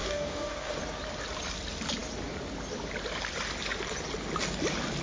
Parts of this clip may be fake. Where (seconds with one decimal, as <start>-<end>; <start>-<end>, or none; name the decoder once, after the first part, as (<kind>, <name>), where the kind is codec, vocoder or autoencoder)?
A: 0.0-0.8 (codec, DAC)